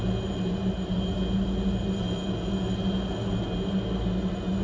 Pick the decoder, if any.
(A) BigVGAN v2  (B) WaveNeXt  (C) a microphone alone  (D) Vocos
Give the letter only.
C